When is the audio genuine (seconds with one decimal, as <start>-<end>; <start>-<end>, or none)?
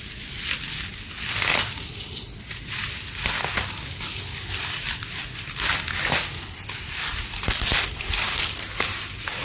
0.0-9.4